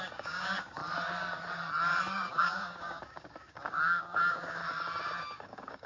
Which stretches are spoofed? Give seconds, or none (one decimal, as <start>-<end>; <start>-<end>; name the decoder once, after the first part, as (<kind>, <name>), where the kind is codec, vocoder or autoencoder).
0.0-0.8 (codec, DAC); 2.1-4.6; 5.2-5.9